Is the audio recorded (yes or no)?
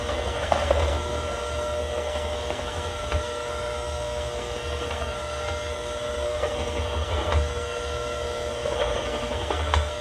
no